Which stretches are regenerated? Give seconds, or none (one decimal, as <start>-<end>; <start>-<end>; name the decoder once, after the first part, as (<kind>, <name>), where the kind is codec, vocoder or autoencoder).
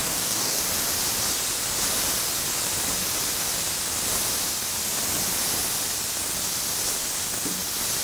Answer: 0.0-0.6 (codec, DAC)